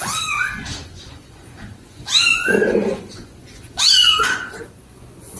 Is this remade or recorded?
remade